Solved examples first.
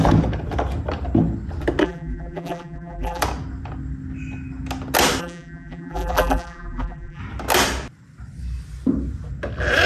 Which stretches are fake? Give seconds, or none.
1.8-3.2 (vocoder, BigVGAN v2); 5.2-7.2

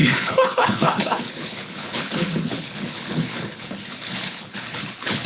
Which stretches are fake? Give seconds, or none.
0.0-5.3 (codec, HILCodec)

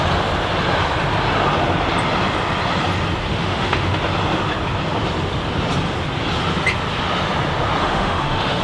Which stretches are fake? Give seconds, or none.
3.3-4.0 (autoencoder, DAC-VAE); 7.8-8.6

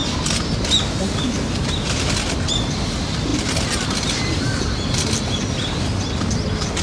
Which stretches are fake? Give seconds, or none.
none

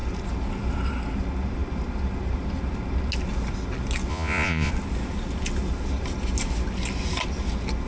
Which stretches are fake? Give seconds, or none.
4.1-4.7 (vocoder, Vocos)

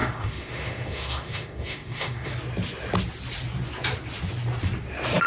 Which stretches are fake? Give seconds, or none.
0.0-2.3 (autoencoder, DAC-VAE)